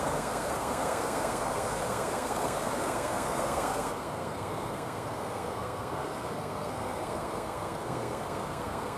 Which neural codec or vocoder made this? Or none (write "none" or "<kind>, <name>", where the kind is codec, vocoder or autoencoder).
codec, SNAC